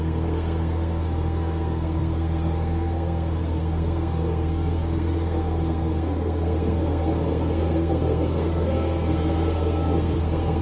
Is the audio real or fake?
fake